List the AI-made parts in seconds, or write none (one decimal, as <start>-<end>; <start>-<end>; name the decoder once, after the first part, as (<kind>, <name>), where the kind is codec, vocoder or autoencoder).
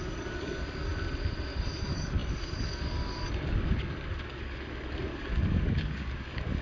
0.0-0.9 (codec, DAC); 1.8-6.6